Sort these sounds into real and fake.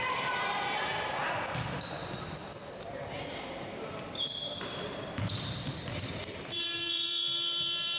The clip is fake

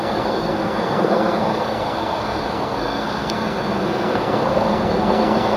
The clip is fake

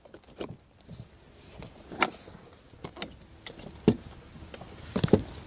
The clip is real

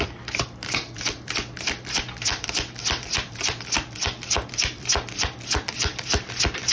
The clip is fake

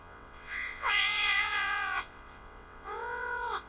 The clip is fake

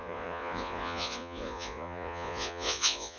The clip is fake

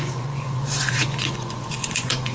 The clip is fake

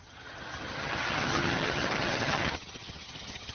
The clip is fake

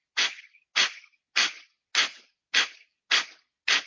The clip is real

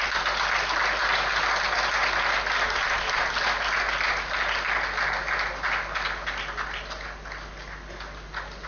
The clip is real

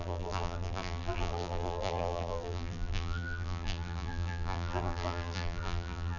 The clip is fake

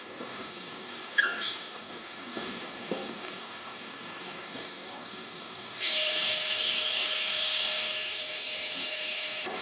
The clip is fake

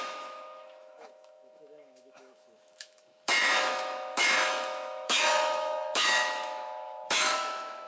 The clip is fake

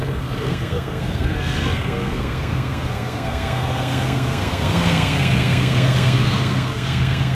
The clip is fake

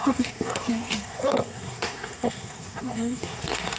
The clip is fake